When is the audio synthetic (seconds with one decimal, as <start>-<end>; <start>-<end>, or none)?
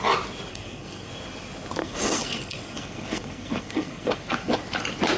0.5-1.1; 1.8-4.5